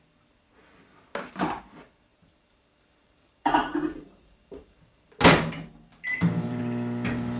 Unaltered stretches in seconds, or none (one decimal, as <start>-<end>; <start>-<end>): 0.0-2.1; 5.1-5.9; 6.6-7.4